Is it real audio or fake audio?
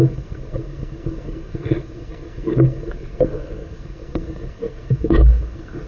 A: fake